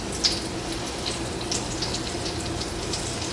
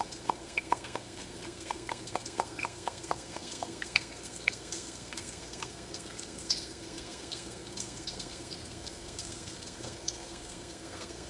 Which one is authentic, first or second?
first